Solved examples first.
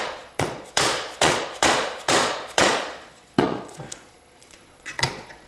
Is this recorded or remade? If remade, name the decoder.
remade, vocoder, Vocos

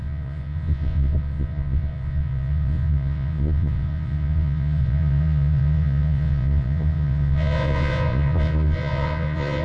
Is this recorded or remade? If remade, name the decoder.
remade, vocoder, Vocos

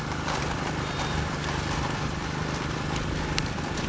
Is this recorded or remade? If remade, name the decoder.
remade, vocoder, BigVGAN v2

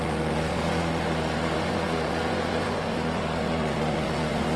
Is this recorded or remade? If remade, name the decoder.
remade, vocoder, Vocos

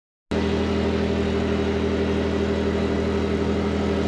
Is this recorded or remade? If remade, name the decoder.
recorded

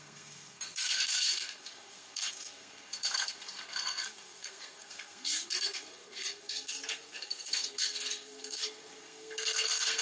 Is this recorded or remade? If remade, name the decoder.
remade, codec, SNAC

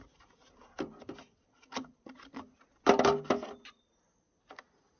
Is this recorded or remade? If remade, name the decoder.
recorded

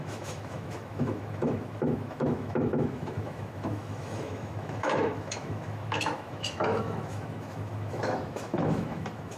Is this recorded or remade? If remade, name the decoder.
remade, autoencoder, DAC-VAE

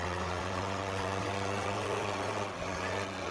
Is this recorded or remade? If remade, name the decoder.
remade, vocoder, WaveNeXt